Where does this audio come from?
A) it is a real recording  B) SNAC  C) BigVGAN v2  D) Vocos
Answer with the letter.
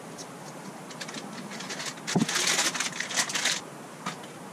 A